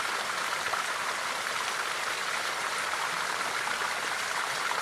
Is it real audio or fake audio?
real